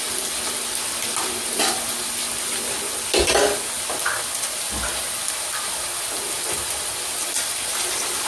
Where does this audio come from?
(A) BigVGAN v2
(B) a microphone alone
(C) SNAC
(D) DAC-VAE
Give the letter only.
B